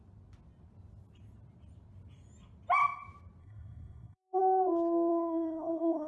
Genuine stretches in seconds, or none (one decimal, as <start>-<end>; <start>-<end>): 0.0-3.4; 4.4-5.1